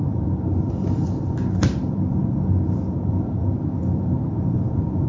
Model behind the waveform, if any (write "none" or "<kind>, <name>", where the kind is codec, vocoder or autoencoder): vocoder, BigVGAN v2